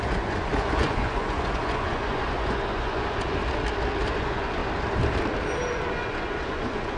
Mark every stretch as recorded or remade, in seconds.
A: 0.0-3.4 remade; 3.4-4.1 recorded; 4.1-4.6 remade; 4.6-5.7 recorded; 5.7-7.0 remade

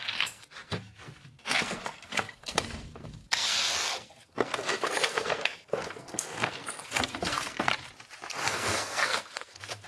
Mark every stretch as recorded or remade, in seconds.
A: 0.0-7.7 remade; 7.7-8.3 recorded; 8.3-9.9 remade

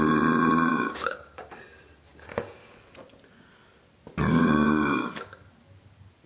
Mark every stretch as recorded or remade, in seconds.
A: 0.0-0.7 recorded; 0.7-1.5 remade; 1.5-2.1 recorded; 2.1-2.7 remade; 2.7-4.4 recorded; 4.4-5.1 remade; 5.1-6.3 recorded

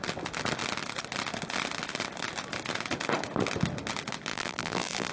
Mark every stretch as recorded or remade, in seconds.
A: 0.0-4.3 recorded; 4.3-5.1 remade

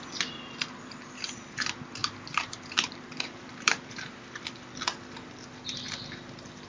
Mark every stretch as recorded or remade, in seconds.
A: 0.0-2.0 recorded; 2.0-3.9 remade; 3.9-6.7 recorded

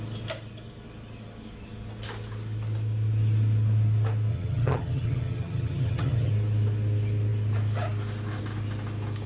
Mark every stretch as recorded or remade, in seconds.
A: 0.0-4.3 recorded; 4.3-6.3 remade; 6.3-9.3 recorded

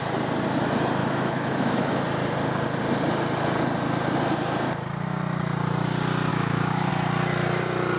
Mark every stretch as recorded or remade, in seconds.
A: 0.0-1.0 recorded; 1.0-2.0 remade; 2.0-6.3 recorded; 6.3-6.9 remade; 6.9-8.0 recorded